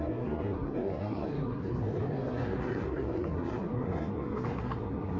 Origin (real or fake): fake